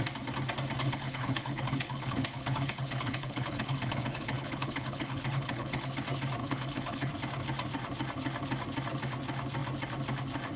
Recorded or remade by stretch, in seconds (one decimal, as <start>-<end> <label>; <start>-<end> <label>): 0.0-0.8 recorded; 0.8-5.9 remade; 5.9-6.4 recorded; 6.4-7.1 remade; 7.1-10.6 recorded